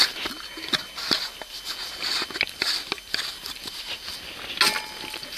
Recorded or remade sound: recorded